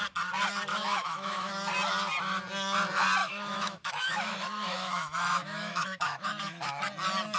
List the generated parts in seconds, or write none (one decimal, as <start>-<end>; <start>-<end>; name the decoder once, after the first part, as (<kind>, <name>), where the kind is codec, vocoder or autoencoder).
0.7-1.5 (autoencoder, DAC-VAE); 3.2-6.8